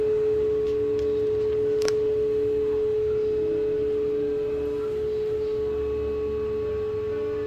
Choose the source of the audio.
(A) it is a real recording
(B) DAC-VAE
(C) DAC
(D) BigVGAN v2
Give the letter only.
A